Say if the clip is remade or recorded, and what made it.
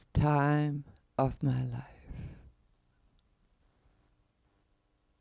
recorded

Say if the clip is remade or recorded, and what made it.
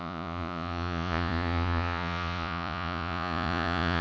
remade, vocoder, Vocos